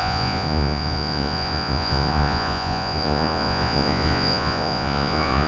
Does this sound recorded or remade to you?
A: remade